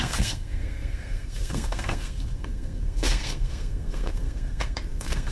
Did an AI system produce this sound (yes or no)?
yes